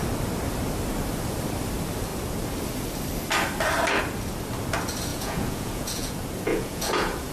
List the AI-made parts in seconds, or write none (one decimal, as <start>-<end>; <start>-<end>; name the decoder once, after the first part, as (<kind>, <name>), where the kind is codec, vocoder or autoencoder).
5.1-6.1 (vocoder, Vocos); 6.5-7.3

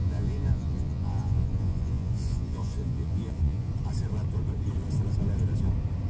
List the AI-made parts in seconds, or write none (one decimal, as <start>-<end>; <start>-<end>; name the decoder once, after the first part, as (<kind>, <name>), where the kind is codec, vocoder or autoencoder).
0.0-3.7 (vocoder, Vocos)

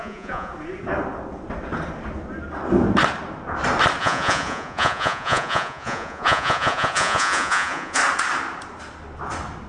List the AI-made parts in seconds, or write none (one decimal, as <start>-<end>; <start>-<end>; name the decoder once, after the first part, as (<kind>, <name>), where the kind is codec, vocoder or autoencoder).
0.0-0.5 (vocoder, Vocos); 4.0-8.0

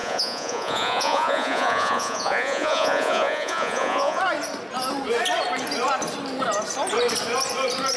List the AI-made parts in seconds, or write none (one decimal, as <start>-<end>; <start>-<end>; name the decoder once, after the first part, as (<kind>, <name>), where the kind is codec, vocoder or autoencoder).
0.0-4.2 (vocoder, Vocos)

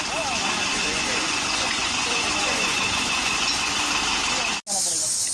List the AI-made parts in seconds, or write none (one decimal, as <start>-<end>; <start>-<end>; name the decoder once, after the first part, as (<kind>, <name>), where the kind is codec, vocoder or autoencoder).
0.7-3.9 (vocoder, Vocos)

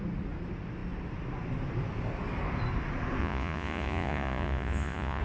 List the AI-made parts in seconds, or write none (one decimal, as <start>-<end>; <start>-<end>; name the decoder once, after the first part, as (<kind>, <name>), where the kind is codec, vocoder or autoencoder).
3.2-5.2 (vocoder, Vocos)